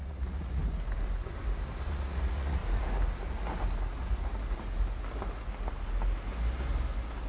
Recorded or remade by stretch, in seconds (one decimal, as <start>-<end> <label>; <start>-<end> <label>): 0.0-0.6 remade; 0.6-1.9 recorded; 1.9-2.6 remade; 2.6-7.3 recorded